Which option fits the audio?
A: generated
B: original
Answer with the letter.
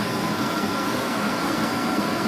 A